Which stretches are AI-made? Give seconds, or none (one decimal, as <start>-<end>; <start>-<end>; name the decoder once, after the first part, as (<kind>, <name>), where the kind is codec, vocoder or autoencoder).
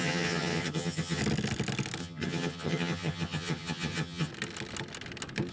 0.0-1.2 (vocoder, HiFi-GAN); 2.0-4.3